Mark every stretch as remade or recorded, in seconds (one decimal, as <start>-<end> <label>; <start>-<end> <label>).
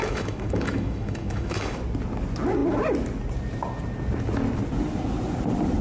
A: 0.0-1.8 remade; 1.8-5.8 recorded